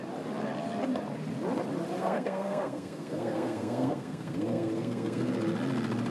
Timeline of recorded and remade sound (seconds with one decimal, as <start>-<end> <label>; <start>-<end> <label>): 0.0-2.0 recorded; 2.0-5.3 remade; 5.3-6.1 recorded